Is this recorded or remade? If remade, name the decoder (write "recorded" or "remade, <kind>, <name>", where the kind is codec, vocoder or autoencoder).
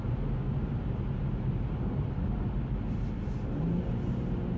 recorded